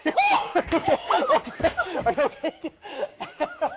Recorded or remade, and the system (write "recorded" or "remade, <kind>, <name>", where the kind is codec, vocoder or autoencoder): remade, codec, DAC